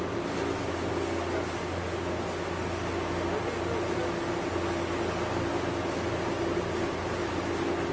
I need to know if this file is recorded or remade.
recorded